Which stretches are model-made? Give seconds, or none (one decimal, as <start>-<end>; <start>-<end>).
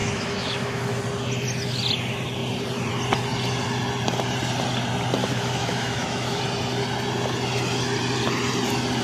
0.0-1.0; 5.2-6.4